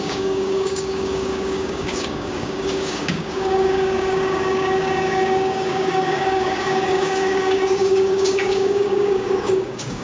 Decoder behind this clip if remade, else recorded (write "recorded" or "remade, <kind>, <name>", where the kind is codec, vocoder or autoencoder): remade, codec, DAC